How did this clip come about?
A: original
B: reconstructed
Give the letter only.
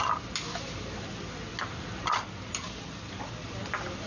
A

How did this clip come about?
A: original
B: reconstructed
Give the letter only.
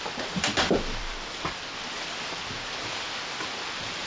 B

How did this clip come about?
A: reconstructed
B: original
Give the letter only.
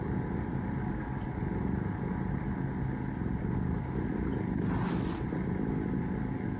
B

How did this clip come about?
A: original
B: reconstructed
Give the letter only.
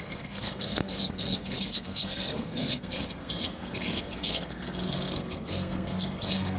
B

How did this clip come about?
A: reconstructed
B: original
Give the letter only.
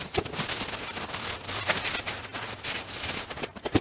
B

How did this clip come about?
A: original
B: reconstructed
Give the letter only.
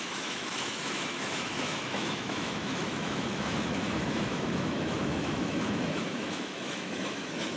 B